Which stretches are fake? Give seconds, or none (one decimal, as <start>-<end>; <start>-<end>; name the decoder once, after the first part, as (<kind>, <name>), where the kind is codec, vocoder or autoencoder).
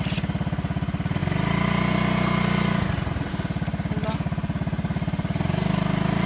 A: none